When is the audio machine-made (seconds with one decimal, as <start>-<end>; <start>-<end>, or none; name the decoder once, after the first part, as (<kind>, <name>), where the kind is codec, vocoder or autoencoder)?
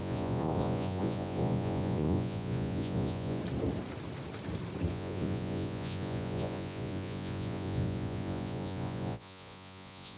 0.0-3.4 (vocoder, Vocos); 4.9-10.2